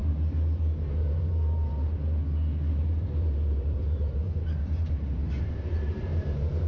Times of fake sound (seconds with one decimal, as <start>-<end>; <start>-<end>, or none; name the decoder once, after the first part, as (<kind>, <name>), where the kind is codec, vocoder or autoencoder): 1.0-1.9 (vocoder, BigVGAN v2); 2.7-6.7